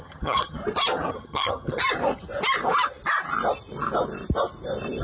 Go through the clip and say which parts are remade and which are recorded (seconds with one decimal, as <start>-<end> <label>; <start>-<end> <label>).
0.0-0.6 remade; 0.6-1.1 recorded; 1.1-1.8 remade; 1.8-5.0 recorded